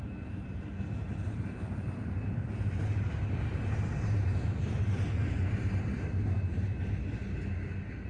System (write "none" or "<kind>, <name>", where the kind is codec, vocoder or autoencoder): none